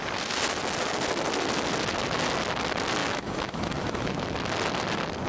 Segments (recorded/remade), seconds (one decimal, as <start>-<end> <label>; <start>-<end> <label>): 0.0-3.0 recorded; 3.0-4.2 remade; 4.2-5.3 recorded